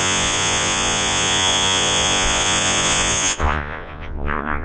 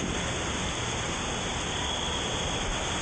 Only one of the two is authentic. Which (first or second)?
second